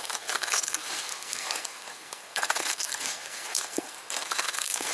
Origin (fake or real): fake